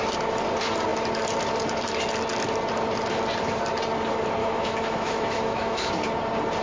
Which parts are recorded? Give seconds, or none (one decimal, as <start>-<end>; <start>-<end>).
0.0-4.4; 5.9-6.6